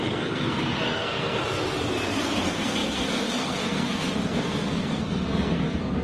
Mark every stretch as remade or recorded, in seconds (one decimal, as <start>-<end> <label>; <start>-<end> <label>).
0.0-1.4 remade; 1.4-2.2 recorded; 2.2-6.0 remade